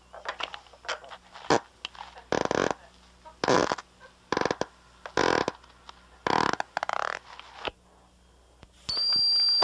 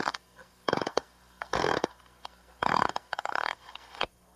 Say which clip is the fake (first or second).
second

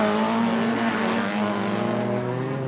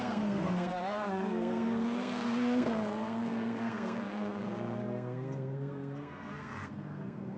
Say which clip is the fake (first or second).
second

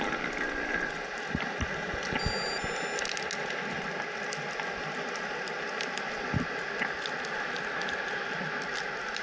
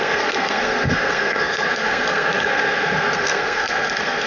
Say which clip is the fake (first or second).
second